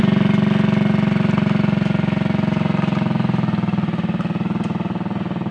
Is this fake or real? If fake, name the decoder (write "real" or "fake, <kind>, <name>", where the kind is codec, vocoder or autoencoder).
real